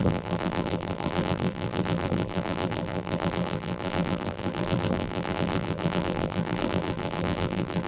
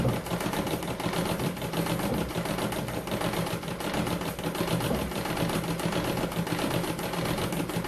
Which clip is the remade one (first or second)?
first